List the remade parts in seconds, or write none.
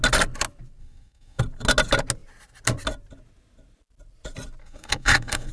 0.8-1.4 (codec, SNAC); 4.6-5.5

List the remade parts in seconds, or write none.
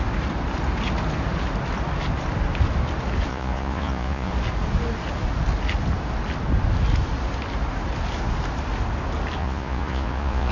3.3-4.3 (vocoder, Vocos); 9.4-10.5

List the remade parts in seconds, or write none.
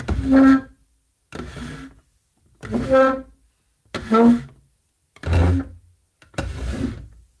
none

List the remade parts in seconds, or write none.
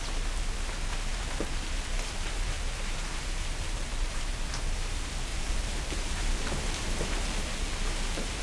1.1-4.5 (vocoder, BigVGAN v2); 5.3-8.4